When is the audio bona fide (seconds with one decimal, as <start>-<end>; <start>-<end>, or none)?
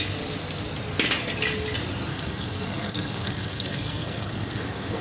0.0-2.1